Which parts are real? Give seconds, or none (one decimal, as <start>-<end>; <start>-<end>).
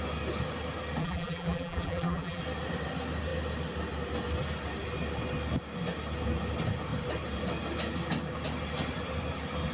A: 0.0-1.0; 2.4-9.7